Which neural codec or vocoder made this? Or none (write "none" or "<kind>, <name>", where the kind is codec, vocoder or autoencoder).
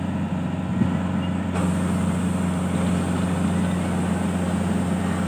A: none